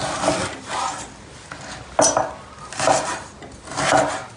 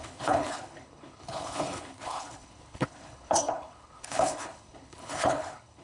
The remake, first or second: second